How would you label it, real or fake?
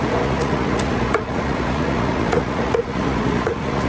fake